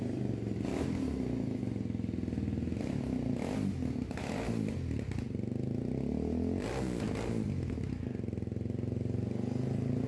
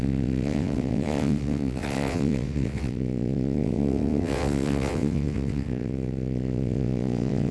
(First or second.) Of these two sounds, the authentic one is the first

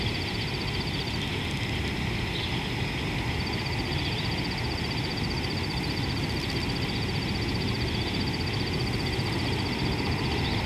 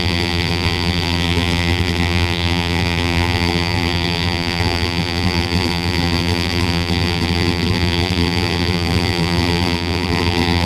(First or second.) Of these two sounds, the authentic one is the first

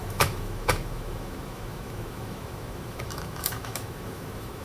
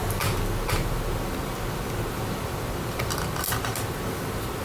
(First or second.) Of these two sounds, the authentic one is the second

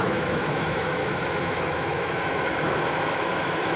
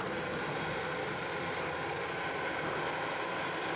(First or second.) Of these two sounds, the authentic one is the second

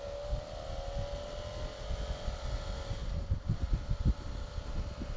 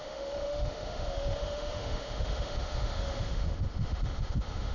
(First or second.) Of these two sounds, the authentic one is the first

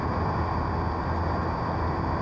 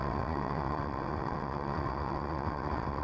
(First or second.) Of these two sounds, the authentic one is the first